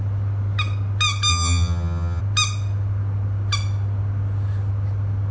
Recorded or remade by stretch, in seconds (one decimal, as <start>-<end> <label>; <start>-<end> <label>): 0.0-1.3 recorded; 1.3-2.2 remade; 2.2-5.3 recorded